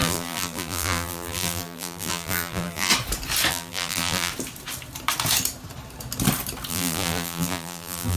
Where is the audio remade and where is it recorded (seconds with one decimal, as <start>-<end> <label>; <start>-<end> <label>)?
0.0-2.9 remade; 2.9-3.5 recorded; 3.5-4.3 remade; 4.3-6.7 recorded; 6.7-8.2 remade